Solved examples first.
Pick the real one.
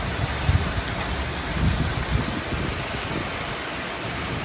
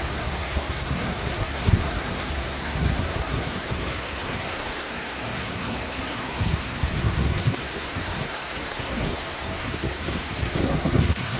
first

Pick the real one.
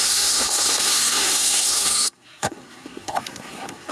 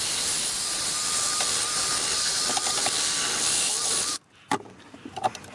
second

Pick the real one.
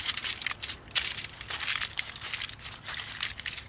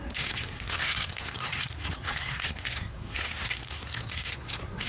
first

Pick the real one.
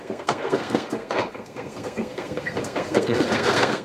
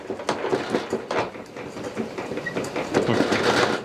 second